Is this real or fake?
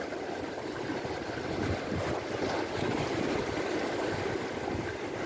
real